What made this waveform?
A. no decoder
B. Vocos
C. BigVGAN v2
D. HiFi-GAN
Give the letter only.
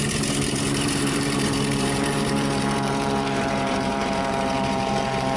C